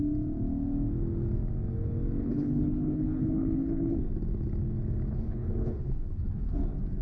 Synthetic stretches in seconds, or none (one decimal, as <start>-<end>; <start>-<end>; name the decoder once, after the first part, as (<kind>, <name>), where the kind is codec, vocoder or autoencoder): 2.2-4.0 (codec, HILCodec); 5.1-6.4